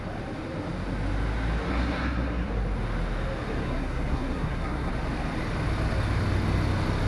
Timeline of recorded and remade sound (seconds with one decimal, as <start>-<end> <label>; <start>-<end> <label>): 0.0-1.7 recorded; 1.7-2.5 remade; 2.5-3.6 recorded; 3.6-4.9 remade; 4.9-7.1 recorded